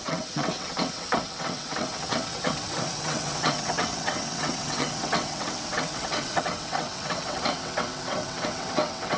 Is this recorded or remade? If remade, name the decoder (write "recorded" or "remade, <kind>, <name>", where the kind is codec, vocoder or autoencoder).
remade, vocoder, WaveNeXt